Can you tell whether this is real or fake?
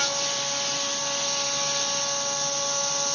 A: real